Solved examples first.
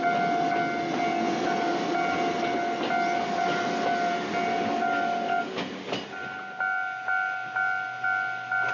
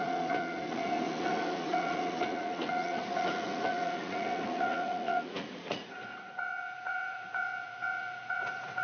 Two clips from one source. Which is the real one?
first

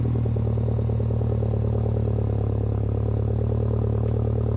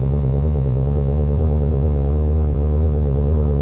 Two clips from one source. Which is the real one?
first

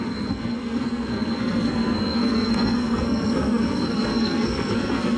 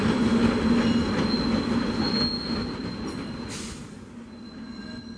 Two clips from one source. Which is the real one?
second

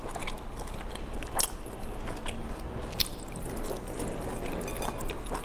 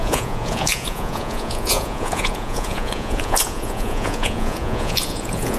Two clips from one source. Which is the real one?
first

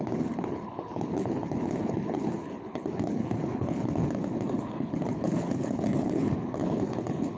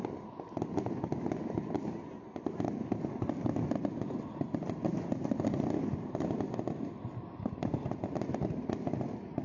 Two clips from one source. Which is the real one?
second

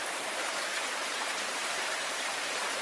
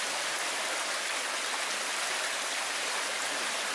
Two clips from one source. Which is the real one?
second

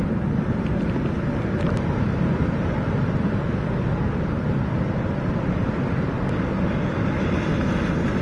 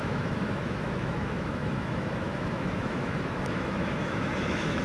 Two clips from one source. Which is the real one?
first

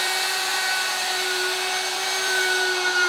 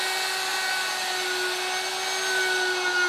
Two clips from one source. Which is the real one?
second